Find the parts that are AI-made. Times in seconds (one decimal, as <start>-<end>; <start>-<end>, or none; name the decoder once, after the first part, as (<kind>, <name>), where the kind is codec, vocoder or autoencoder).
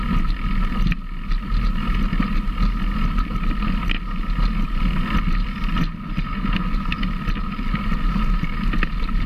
none